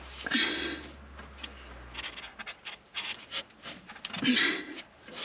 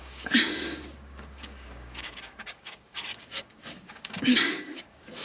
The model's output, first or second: second